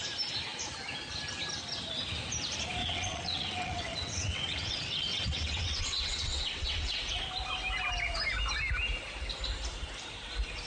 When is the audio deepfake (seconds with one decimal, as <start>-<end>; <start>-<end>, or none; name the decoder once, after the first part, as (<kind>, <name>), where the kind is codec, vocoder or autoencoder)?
2.8-7.1 (vocoder, WaveNeXt)